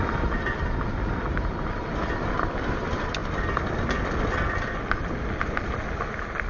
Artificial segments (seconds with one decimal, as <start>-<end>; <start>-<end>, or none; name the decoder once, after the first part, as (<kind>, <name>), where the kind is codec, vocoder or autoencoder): none